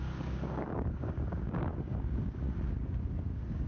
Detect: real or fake fake